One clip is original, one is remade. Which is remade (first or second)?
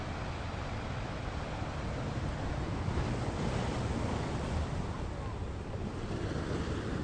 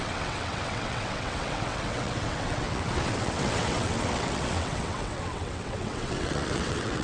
second